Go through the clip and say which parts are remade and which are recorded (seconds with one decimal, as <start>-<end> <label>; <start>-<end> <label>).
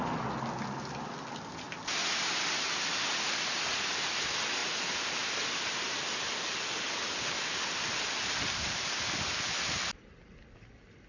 0.0-11.1 recorded